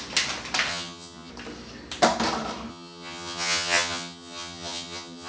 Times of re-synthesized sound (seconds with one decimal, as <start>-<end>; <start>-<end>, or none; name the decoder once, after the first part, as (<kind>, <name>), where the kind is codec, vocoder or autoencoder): 0.7-1.3 (vocoder, HiFi-GAN); 2.7-5.3